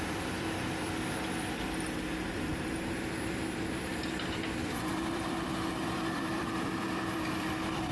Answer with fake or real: fake